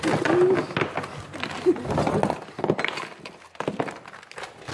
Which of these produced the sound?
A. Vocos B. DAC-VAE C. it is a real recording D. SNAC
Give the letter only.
C